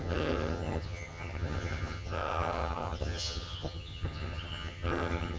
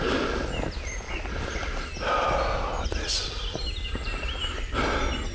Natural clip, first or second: second